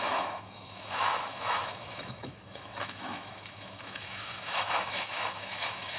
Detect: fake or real fake